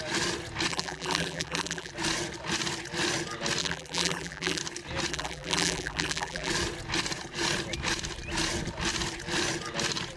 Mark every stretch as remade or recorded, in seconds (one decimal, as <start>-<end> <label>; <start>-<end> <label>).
0.0-0.7 recorded; 0.7-1.9 remade; 1.9-3.6 recorded; 3.6-4.6 remade; 4.6-5.1 recorded; 5.1-6.5 remade; 6.5-10.2 recorded